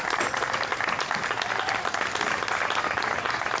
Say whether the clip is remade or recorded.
recorded